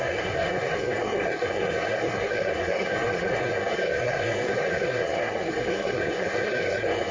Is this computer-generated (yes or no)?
yes